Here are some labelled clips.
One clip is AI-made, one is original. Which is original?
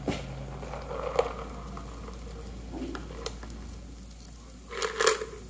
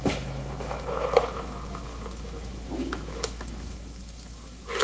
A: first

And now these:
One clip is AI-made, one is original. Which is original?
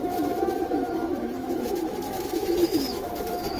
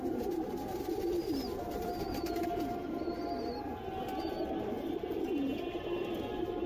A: second